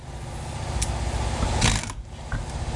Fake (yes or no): no